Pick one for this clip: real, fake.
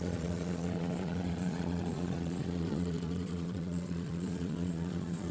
fake